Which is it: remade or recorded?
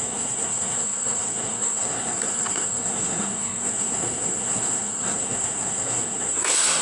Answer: remade